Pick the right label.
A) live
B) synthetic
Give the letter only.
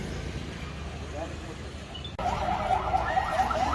A